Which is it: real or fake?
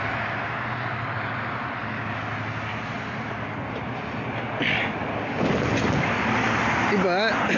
real